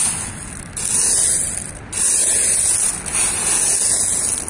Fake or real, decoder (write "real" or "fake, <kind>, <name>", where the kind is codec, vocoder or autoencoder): real